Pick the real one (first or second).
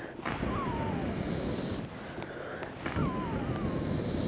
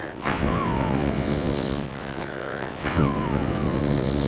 first